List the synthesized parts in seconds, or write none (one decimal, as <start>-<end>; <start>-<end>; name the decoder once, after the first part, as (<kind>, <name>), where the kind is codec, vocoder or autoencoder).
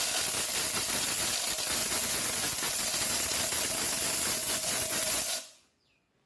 1.8-2.8 (vocoder, Vocos); 4.4-6.3